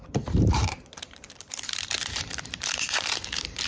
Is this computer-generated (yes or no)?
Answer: yes